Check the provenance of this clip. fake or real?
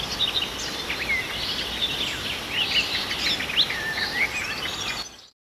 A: real